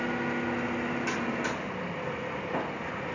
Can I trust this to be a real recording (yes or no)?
yes